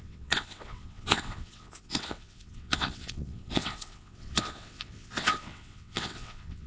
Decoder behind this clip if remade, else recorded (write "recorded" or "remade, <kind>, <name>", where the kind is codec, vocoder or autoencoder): remade, vocoder, WaveNeXt